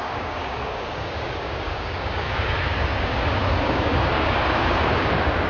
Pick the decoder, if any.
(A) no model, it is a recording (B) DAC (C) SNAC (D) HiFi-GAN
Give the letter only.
B